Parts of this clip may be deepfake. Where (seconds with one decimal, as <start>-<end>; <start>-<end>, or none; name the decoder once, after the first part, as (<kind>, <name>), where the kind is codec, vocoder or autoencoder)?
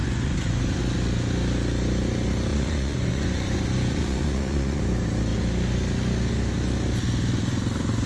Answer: 0.0-0.8 (vocoder, Vocos); 2.5-4.8